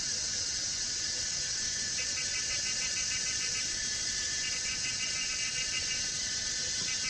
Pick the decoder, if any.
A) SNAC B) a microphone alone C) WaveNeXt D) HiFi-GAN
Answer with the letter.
C